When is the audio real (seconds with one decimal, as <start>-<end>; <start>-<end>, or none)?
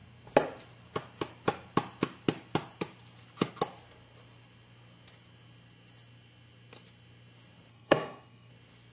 0.0-7.7; 8.5-8.9